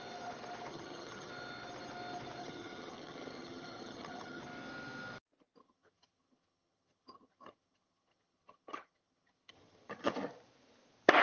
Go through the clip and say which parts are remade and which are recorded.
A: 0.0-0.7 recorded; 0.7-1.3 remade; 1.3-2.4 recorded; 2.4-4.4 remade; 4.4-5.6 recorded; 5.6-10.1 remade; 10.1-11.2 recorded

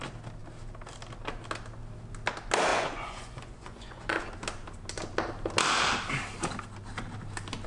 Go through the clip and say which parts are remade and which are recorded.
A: 0.0-2.7 recorded; 2.7-4.2 remade; 4.2-7.7 recorded

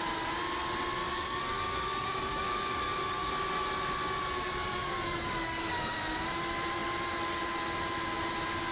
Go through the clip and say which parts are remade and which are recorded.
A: 0.0-1.1 recorded; 1.1-3.3 remade; 3.3-4.6 recorded; 4.6-6.0 remade; 6.0-8.7 recorded

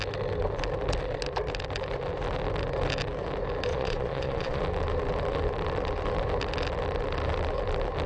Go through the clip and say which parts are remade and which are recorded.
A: 0.0-3.7 recorded; 3.7-4.6 remade; 4.6-8.1 recorded

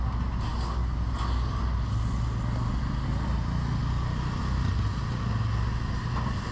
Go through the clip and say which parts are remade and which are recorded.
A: 0.0-6.5 recorded

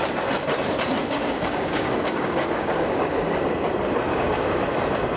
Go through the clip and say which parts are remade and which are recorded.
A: 0.0-1.0 recorded; 1.0-3.4 remade; 3.4-4.1 recorded; 4.1-4.6 remade; 4.6-5.2 recorded